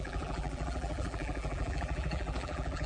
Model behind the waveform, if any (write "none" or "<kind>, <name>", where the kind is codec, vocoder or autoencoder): vocoder, BigVGAN v2